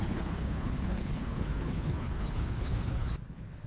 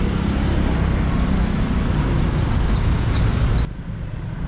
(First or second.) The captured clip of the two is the second